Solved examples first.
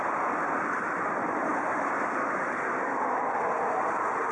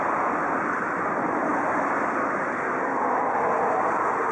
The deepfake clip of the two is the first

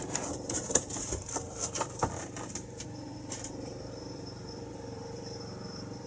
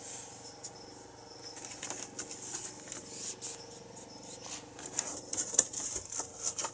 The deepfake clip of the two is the first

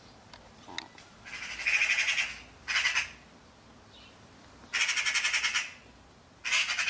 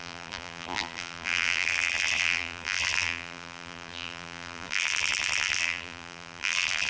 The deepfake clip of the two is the second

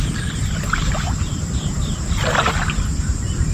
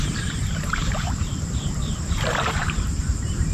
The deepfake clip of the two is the second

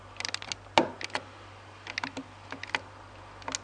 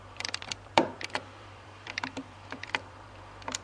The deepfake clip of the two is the second